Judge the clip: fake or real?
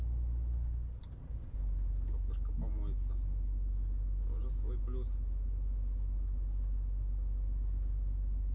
real